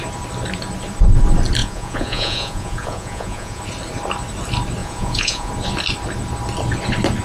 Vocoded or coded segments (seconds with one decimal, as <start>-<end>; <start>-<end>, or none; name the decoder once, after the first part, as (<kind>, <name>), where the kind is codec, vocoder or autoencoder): 1.6-3.6 (vocoder, Vocos); 4.8-5.5